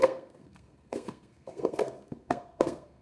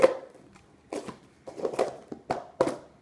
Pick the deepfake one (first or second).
first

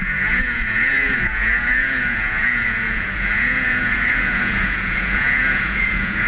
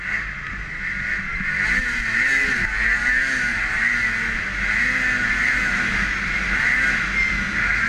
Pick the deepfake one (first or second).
first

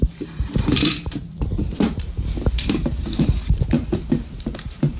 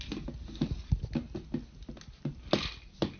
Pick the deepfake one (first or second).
first